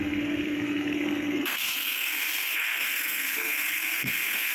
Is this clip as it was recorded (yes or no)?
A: no